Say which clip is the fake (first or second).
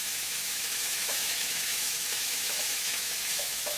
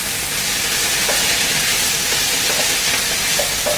first